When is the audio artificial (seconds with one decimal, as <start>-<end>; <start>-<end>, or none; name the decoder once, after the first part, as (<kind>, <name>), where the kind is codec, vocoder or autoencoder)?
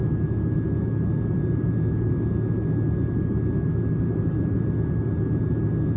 none